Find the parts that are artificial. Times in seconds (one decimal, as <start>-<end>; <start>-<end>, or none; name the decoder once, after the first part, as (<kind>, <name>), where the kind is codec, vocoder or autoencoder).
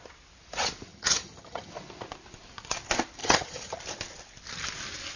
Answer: 0.9-1.7 (vocoder, HiFi-GAN); 3.2-3.8